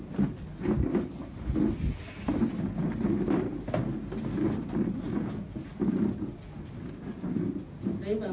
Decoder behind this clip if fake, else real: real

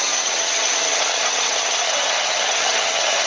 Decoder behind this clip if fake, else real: fake, vocoder, HiFi-GAN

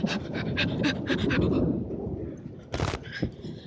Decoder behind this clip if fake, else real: real